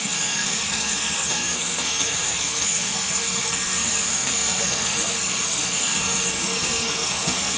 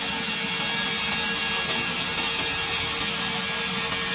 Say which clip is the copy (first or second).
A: first